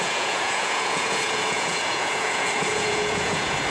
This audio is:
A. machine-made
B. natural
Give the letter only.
A